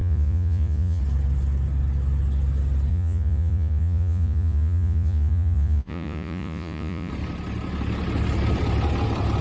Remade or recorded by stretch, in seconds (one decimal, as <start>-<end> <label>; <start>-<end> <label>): 0.0-1.0 remade; 1.0-2.9 recorded; 2.9-7.1 remade; 7.1-9.4 recorded